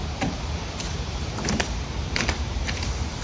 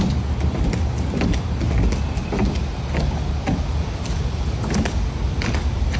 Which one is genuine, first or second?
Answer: second